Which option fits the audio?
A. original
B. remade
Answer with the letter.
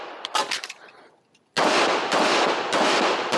A